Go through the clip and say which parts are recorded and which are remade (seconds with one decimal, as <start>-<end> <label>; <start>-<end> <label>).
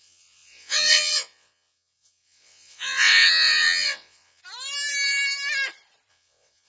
0.0-4.4 remade; 4.4-6.1 recorded; 6.1-6.7 remade